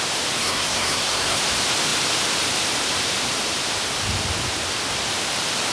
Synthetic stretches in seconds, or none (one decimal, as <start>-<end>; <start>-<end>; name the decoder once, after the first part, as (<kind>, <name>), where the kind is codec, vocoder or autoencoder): 0.4-1.4 (codec, SNAC)